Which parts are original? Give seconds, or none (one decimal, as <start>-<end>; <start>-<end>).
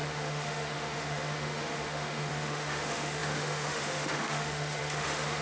none